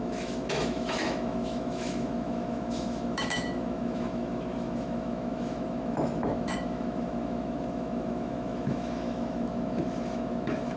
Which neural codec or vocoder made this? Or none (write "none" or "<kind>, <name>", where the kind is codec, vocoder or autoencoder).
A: autoencoder, DAC-VAE